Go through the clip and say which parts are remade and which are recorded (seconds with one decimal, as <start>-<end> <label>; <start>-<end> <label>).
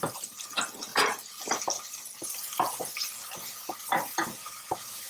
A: 0.0-4.4 recorded; 4.4-5.1 remade